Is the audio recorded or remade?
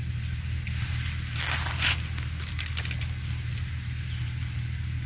recorded